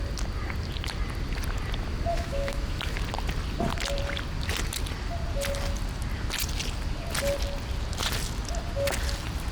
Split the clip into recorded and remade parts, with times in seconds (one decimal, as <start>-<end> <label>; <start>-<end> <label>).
0.0-2.1 recorded; 2.1-3.0 remade; 3.0-9.5 recorded